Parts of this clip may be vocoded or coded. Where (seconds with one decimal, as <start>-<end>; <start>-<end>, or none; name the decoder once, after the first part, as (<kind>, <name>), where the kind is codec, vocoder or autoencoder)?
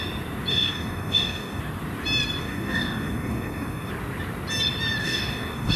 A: 0.5-1.6 (codec, DAC); 2.4-3.9; 5.0-5.8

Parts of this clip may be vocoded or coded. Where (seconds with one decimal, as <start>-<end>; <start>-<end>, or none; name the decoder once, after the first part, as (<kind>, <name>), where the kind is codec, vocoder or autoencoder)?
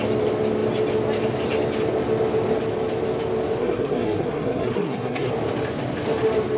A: 3.6-5.3 (codec, SNAC)